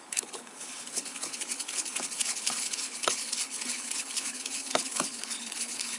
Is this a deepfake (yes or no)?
yes